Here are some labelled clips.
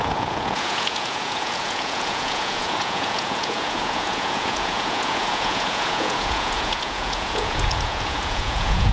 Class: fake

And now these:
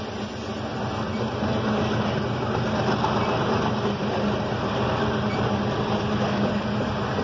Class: real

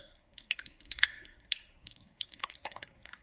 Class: fake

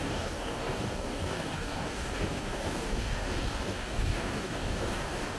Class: fake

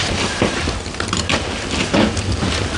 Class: real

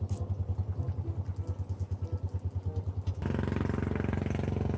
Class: real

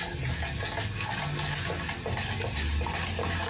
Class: real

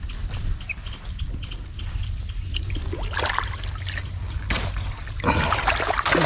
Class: real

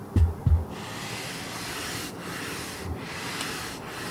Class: real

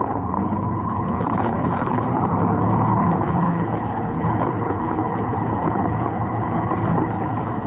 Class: fake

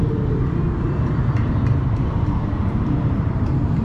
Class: fake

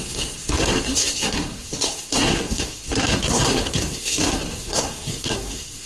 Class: fake